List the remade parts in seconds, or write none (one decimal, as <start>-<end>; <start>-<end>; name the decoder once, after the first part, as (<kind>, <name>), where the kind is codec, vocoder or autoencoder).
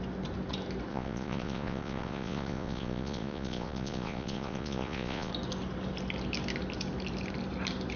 0.9-5.3 (vocoder, Vocos)